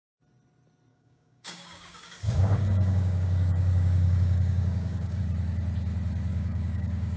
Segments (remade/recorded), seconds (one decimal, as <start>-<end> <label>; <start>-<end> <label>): 0.0-0.9 recorded; 0.9-5.2 remade; 5.2-6.3 recorded; 6.3-7.2 remade